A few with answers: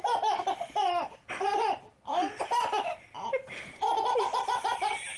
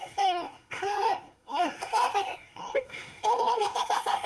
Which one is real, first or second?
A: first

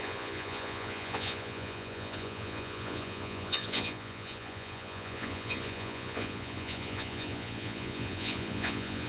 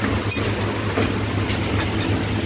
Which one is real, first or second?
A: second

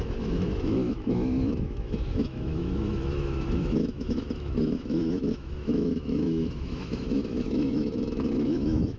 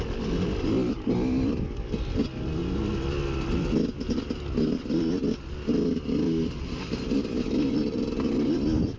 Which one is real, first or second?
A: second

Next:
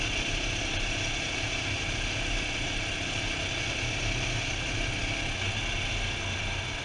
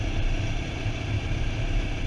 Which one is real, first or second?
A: first